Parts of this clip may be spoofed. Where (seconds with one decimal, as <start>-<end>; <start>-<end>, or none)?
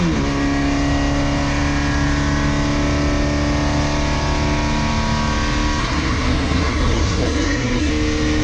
5.8-7.9